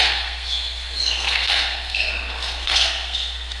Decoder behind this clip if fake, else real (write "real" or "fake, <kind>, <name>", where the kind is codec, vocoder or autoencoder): fake, codec, SNAC